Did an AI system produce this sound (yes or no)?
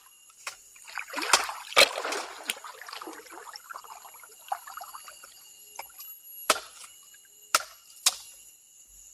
no